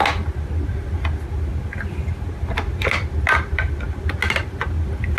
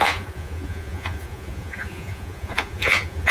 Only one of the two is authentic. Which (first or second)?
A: first